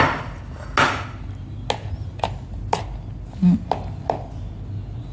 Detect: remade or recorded recorded